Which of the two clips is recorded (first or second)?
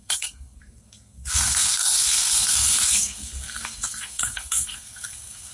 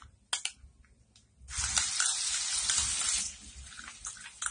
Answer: second